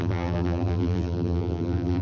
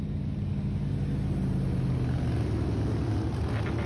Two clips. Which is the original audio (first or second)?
second